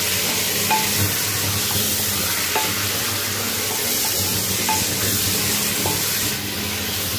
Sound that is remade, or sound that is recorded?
recorded